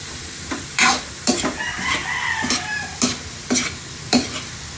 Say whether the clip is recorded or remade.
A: remade